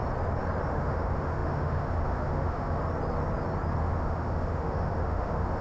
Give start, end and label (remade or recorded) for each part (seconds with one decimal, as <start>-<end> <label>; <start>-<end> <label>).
0.0-0.7 recorded; 0.7-2.8 remade; 2.8-3.8 recorded; 3.8-5.6 remade